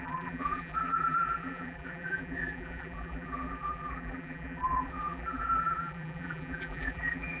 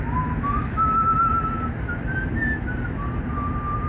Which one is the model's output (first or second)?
first